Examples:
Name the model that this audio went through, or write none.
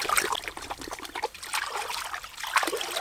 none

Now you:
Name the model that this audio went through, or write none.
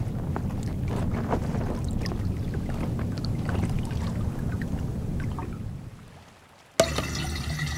none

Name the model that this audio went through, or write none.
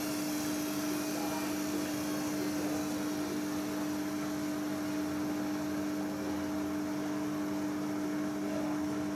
none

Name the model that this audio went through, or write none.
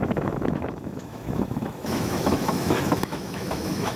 autoencoder, DAC-VAE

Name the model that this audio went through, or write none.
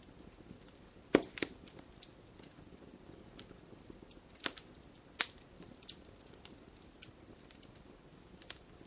none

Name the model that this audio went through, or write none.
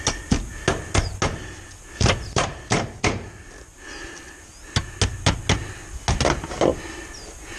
none